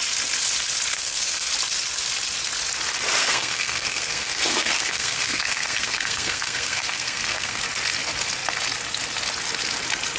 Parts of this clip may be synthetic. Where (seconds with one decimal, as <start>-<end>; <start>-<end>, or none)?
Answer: 0.9-1.5; 3.2-7.6